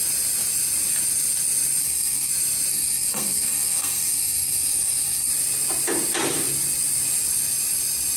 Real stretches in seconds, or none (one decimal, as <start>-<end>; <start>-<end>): 0.0-1.8; 2.3-2.7; 5.3-8.2